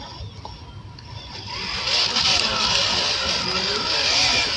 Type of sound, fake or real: real